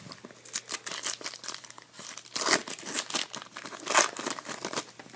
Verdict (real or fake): real